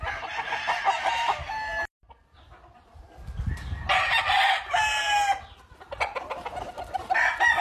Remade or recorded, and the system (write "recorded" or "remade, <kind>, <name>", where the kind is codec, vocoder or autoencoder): recorded